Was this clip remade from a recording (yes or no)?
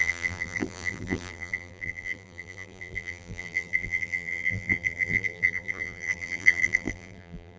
yes